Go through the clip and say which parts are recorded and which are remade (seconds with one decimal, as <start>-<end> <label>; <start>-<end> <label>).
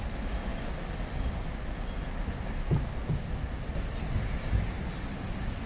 0.0-5.7 recorded